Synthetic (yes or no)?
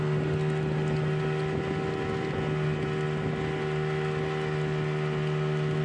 no